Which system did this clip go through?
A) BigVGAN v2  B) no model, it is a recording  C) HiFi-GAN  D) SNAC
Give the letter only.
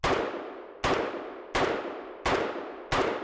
B